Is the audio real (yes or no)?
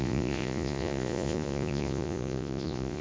no